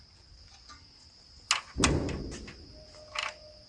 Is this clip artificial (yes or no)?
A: no